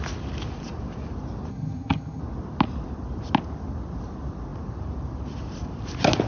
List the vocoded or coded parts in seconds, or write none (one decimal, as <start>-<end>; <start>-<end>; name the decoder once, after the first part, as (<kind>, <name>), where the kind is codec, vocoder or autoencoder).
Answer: 1.5-2.2 (vocoder, HiFi-GAN)